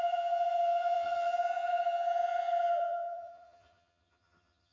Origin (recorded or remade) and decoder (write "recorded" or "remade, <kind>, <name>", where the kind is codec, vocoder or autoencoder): remade, vocoder, HiFi-GAN